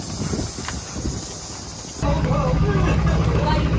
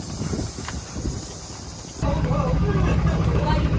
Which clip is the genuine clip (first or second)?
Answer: first